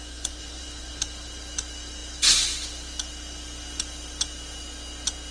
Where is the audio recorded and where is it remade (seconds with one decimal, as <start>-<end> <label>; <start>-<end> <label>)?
0.0-0.9 remade; 0.9-5.3 recorded